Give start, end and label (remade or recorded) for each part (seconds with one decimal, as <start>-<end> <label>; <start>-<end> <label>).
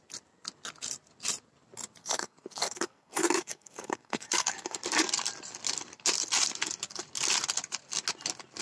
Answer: 0.0-2.0 recorded; 2.0-4.8 remade; 4.8-8.6 recorded